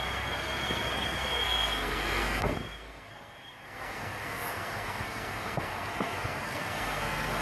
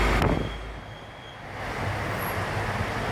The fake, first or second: first